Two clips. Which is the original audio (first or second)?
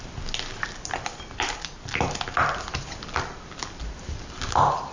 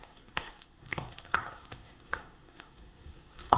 first